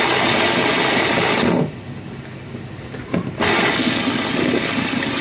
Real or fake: real